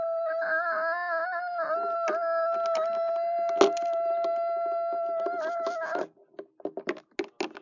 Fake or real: real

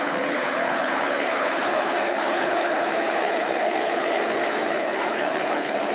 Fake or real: fake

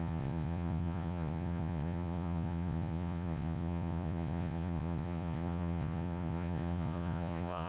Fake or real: fake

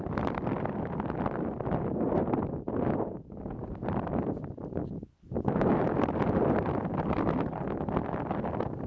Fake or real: real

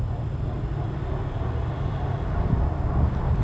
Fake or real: real